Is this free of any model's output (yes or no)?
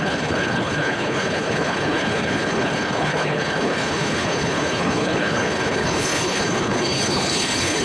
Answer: no